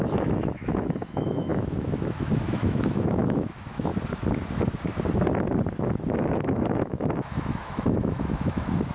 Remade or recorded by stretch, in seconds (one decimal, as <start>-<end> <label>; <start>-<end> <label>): 0.0-3.9 remade; 3.9-6.1 recorded; 6.1-8.9 remade